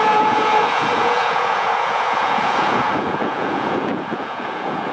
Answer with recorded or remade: remade